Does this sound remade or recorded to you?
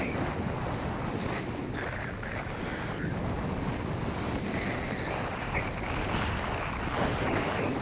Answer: recorded